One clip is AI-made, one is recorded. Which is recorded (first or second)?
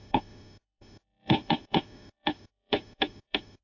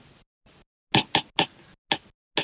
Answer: second